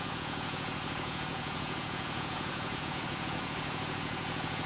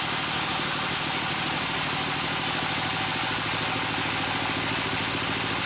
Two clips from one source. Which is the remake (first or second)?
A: first